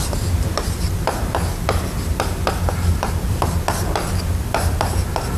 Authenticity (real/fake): fake